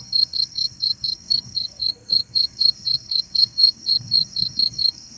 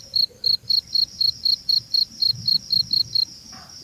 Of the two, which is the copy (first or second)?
first